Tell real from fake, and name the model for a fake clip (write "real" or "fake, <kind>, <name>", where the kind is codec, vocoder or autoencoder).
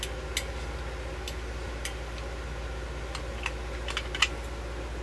real